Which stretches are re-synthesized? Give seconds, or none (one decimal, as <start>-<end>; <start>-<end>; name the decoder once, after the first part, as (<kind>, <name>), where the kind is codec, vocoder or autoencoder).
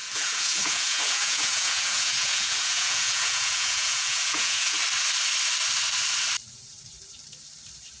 0.0-4.8 (vocoder, Vocos)